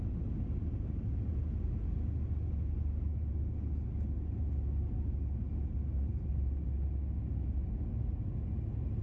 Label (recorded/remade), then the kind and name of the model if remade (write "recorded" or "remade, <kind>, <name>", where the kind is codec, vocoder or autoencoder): recorded